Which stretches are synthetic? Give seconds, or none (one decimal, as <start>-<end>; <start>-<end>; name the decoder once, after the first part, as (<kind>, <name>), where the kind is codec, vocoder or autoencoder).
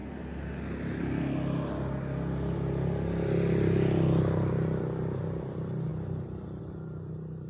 none